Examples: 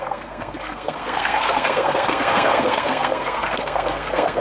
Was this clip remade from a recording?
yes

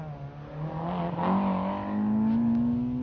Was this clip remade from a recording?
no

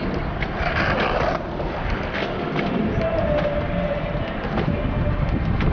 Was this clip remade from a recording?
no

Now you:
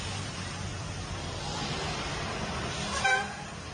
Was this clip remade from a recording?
no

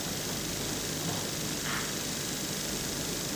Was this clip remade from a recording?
no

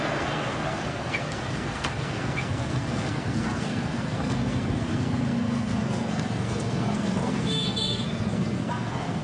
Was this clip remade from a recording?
yes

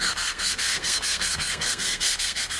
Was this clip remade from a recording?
yes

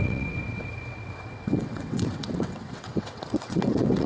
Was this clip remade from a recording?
yes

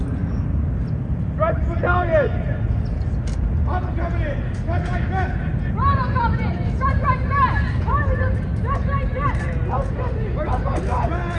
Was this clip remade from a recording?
no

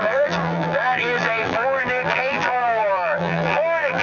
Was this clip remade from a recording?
yes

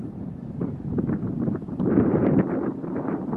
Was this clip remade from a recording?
yes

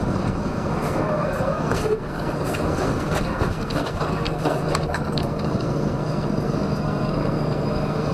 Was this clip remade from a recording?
yes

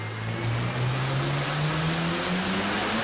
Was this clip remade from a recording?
no